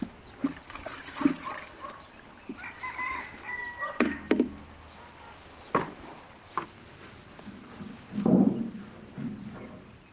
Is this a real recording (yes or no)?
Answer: yes